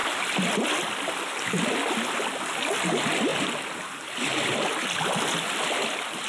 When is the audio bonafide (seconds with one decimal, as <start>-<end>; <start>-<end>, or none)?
0.0-6.3

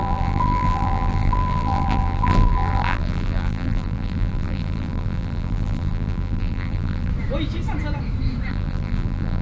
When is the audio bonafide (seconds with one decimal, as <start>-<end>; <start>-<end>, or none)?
7.1-8.5

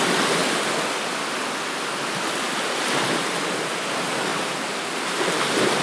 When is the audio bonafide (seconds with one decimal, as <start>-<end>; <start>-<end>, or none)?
0.0-4.3; 5.2-5.8